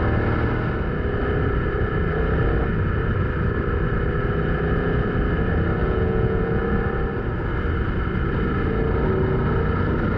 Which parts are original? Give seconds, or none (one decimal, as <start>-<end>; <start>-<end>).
0.0-5.8; 6.6-10.2